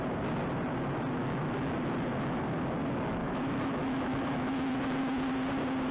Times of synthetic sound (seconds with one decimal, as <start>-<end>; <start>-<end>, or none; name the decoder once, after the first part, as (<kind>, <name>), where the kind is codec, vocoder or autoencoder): 1.2-1.9 (autoencoder, DAC-VAE); 3.2-5.0